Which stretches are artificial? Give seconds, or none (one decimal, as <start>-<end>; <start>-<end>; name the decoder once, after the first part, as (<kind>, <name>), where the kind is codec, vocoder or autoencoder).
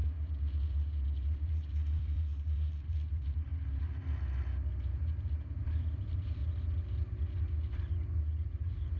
0.6-3.5 (vocoder, BigVGAN v2); 5.3-6.4; 8.2-9.0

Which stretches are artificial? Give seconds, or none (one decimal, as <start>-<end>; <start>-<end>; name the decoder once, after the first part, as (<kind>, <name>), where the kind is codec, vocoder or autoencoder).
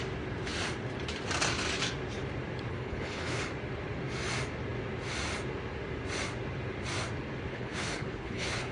2.7-3.4 (codec, HILCodec); 7.5-8.7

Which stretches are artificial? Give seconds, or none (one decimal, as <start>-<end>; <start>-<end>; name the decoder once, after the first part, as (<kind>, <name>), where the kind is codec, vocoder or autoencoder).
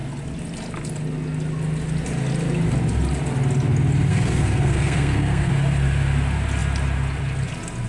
4.1-5.5 (codec, SNAC)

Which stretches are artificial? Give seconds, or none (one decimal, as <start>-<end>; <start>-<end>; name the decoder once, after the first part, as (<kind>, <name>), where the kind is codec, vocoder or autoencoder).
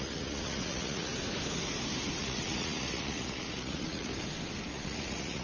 0.0-1.1 (vocoder, Vocos); 2.2-4.1; 4.7-5.4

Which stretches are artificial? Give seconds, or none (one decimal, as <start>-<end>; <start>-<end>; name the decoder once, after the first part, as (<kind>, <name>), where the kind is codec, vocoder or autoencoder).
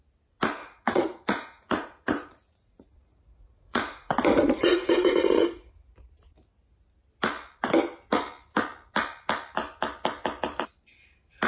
0.6-5.7 (vocoder, Vocos)